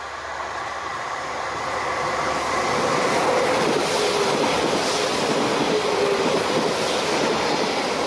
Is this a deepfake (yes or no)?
no